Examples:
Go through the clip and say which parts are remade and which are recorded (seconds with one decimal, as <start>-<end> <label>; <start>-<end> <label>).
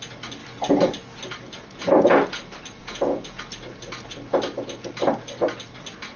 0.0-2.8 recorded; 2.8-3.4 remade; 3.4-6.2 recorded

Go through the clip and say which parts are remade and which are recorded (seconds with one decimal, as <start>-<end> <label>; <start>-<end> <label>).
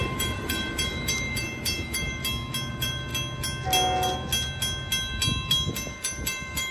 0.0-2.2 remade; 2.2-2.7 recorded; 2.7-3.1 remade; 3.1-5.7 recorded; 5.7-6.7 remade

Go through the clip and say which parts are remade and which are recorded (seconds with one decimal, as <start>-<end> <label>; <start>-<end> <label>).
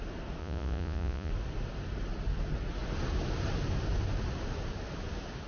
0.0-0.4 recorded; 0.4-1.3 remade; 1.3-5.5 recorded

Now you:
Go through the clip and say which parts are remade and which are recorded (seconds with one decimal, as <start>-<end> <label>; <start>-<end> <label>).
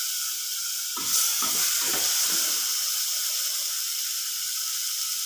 0.0-5.3 recorded